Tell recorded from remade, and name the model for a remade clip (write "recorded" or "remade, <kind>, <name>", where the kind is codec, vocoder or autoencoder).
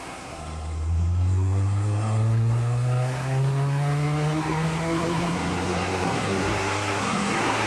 remade, codec, SNAC